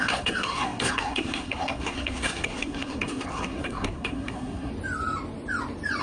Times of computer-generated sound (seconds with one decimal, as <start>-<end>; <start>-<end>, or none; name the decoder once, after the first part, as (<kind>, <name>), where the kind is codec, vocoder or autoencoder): 0.0-4.7 (codec, SNAC)